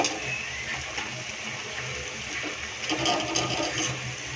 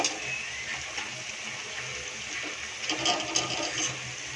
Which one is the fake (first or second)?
first